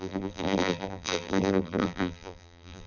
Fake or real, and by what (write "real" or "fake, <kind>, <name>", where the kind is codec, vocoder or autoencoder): fake, vocoder, BigVGAN v2